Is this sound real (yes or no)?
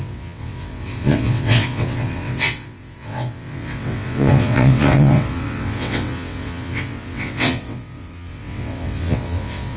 no